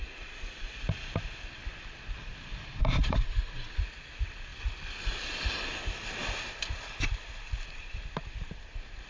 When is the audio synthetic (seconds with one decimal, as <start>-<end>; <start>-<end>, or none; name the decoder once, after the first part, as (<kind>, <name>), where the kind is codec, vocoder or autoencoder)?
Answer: 0.0-0.8 (vocoder, Vocos); 3.0-3.9